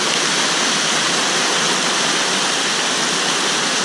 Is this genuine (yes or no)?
yes